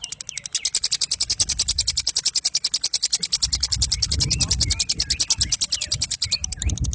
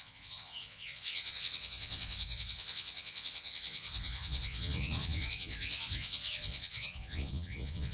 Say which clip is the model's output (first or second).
second